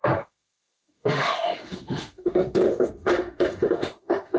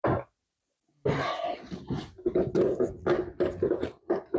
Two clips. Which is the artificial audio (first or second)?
first